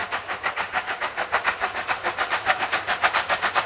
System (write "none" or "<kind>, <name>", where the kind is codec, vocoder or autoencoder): vocoder, BigVGAN v2